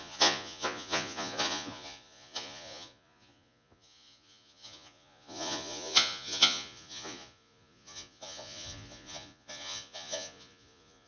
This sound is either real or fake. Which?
fake